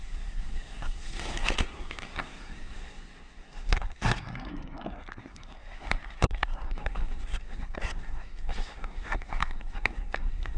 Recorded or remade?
remade